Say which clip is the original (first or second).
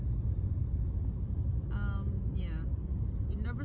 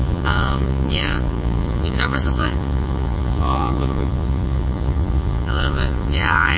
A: first